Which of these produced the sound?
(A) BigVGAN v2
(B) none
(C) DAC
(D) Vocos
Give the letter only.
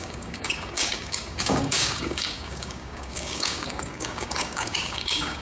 C